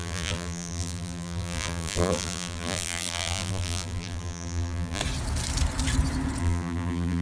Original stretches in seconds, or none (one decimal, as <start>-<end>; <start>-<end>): 5.0-6.4